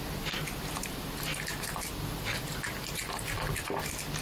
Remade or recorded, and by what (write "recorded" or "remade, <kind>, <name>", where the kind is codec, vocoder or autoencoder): recorded